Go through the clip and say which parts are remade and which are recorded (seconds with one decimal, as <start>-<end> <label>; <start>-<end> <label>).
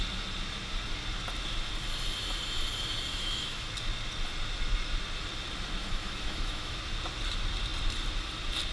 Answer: 0.0-3.1 recorded; 3.1-3.7 remade; 3.7-5.8 recorded; 5.8-6.8 remade; 6.8-8.7 recorded